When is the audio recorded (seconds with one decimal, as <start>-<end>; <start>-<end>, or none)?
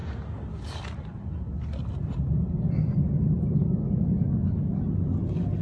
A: 0.0-5.6